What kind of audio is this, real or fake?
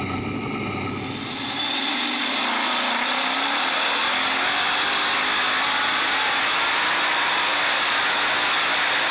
real